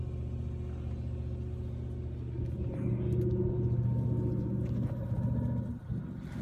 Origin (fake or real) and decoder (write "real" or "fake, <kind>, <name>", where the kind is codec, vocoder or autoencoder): real